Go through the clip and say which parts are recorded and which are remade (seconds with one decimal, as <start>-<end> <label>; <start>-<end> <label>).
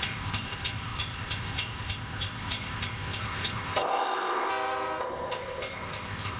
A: 0.0-4.5 remade; 4.5-5.0 recorded; 5.0-6.4 remade